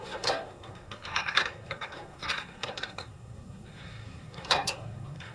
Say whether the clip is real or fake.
fake